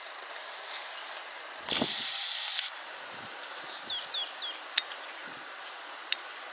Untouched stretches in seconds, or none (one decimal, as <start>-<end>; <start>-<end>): 0.0-6.5